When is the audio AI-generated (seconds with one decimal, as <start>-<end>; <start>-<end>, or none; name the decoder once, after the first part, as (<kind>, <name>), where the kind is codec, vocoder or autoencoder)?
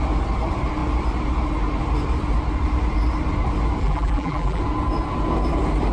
3.8-4.6 (vocoder, BigVGAN v2)